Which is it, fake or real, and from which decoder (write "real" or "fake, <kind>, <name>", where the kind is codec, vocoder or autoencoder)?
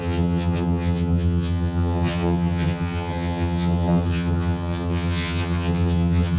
fake, vocoder, HiFi-GAN